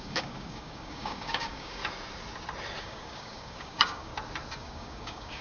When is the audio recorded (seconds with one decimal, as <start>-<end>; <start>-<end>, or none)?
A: 1.8-2.8; 4.1-4.6